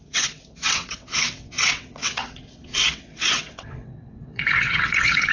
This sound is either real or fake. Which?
fake